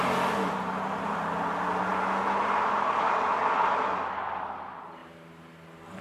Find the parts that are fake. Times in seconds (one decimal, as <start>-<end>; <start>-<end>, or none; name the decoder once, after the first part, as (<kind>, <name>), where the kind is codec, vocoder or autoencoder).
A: none